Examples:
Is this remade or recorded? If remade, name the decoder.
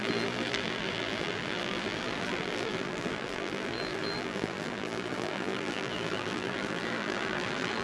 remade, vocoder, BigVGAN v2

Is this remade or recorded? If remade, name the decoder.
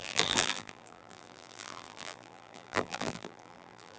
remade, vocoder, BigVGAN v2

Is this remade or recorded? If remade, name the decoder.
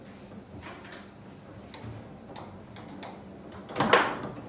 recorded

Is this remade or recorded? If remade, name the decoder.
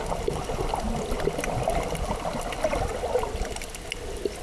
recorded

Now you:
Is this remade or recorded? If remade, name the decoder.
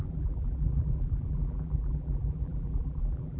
remade, vocoder, BigVGAN v2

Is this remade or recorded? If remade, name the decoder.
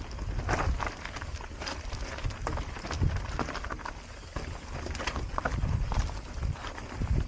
recorded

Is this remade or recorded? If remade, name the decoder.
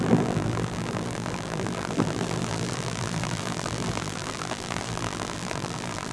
remade, vocoder, BigVGAN v2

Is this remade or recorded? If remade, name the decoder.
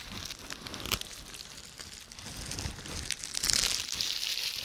recorded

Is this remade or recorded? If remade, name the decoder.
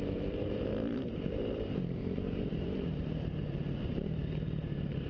remade, vocoder, BigVGAN v2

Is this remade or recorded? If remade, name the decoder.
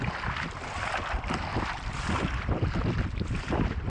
recorded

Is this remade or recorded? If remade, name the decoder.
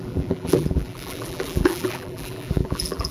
remade, vocoder, BigVGAN v2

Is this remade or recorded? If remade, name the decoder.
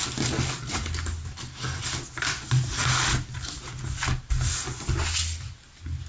recorded